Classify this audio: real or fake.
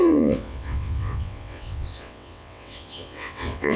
fake